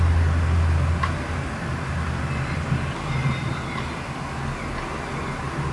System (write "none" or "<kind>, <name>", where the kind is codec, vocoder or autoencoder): none